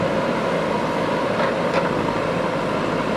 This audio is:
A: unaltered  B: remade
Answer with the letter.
A